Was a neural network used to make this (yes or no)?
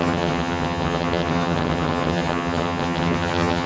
yes